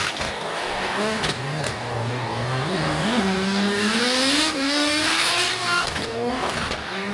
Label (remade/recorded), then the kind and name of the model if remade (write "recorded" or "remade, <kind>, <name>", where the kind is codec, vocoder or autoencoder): remade, codec, DAC